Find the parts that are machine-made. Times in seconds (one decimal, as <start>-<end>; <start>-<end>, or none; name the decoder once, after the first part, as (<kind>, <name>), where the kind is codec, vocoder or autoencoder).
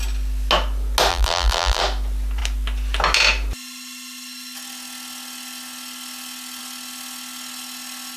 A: 1.1-1.8 (vocoder, BigVGAN v2)